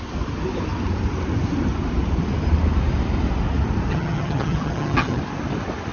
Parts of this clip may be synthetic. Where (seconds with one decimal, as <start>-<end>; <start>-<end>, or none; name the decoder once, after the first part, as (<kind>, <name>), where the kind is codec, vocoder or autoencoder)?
3.9-5.2 (vocoder, HiFi-GAN)

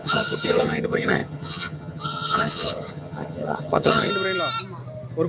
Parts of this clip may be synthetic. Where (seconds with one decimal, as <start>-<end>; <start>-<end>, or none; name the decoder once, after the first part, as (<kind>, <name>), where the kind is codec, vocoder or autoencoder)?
0.0-4.1 (vocoder, HiFi-GAN)

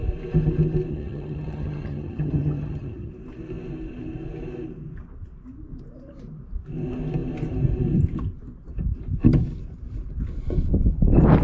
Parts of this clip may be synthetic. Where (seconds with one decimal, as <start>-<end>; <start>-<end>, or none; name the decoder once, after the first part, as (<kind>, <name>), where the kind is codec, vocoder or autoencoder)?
0.9-3.1 (vocoder, HiFi-GAN)

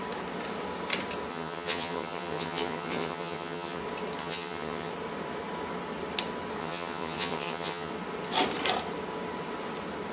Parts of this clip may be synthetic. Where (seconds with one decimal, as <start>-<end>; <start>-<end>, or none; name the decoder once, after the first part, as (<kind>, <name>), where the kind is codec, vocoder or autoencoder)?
1.3-3.8 (vocoder, HiFi-GAN); 4.2-4.9; 6.6-7.9